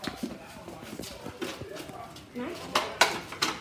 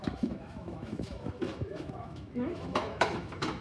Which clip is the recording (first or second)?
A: first